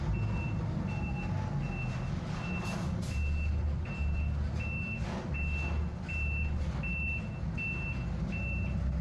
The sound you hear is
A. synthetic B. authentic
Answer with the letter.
B